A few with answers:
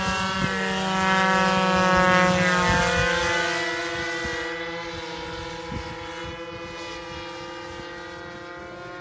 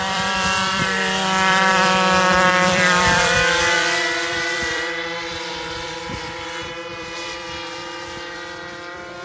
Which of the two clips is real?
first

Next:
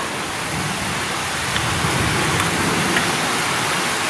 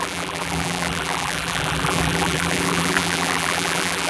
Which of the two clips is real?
first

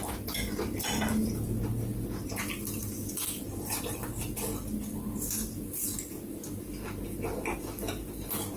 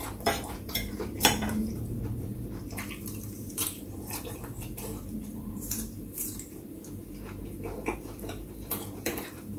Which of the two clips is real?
first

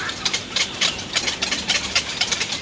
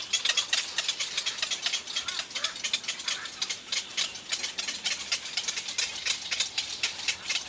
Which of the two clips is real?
second